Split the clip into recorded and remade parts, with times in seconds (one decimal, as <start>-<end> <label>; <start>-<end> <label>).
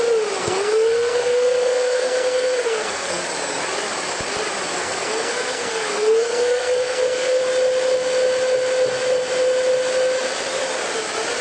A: 0.0-0.4 recorded; 0.4-3.2 remade; 3.2-4.8 recorded; 4.8-7.4 remade; 7.4-11.4 recorded